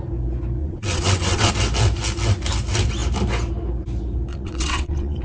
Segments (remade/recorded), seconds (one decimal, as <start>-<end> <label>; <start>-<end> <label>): 0.0-0.6 recorded; 0.6-1.5 remade; 1.5-4.3 recorded; 4.3-5.2 remade